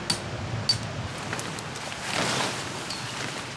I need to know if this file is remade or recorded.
recorded